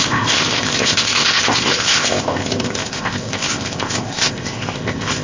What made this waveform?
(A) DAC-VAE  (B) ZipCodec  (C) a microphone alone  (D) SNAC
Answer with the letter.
B